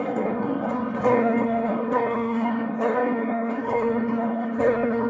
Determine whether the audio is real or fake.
fake